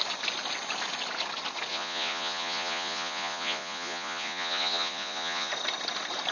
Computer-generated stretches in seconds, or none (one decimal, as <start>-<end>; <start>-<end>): 1.7-5.5